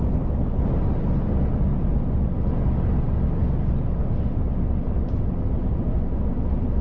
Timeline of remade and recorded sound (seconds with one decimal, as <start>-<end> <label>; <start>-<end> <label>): 0.0-6.8 recorded